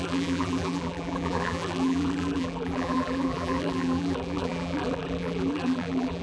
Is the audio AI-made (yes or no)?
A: yes